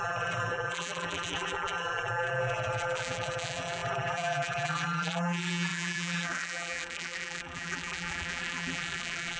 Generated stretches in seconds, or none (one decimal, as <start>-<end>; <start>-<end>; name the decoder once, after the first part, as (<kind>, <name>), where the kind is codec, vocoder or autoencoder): 0.0-9.4 (vocoder, BigVGAN v2)